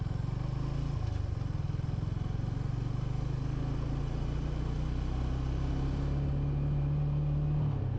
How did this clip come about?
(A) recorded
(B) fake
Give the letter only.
A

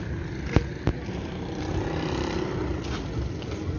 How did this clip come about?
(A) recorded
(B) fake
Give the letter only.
A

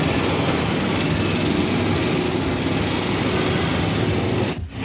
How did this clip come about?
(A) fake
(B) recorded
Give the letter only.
B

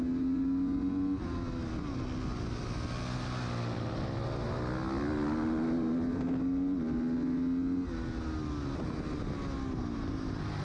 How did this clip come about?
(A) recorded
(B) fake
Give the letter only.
A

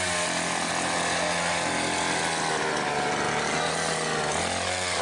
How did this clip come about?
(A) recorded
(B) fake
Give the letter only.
A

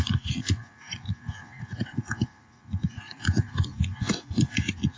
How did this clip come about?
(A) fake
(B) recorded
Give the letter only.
A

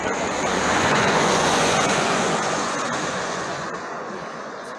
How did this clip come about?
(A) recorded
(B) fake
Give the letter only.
B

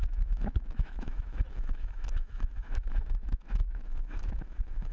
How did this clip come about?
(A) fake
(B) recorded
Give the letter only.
A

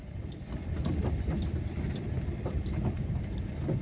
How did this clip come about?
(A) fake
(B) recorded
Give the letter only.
B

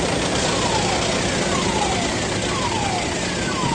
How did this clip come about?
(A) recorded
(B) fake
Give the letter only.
A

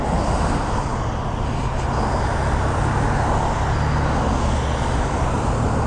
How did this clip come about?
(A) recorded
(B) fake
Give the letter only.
A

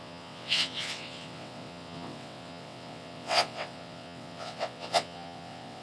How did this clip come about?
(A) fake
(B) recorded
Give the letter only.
A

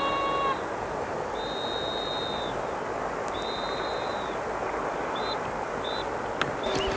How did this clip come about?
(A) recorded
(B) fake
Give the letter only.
A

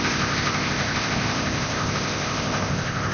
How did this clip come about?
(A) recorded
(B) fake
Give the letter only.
B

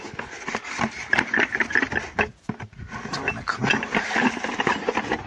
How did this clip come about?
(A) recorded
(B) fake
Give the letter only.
A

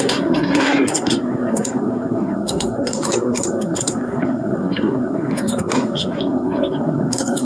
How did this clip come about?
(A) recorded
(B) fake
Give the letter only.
B